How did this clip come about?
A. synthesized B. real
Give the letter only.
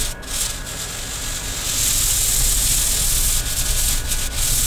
B